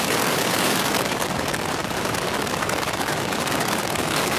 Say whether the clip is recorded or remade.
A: remade